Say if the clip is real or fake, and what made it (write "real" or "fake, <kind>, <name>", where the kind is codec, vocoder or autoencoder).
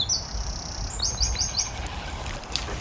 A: real